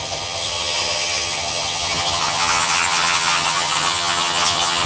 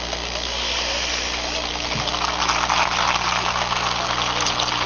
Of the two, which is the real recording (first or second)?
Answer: second